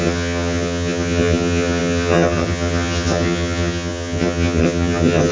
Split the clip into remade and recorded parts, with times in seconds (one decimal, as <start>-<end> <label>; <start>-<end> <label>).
0.0-5.3 remade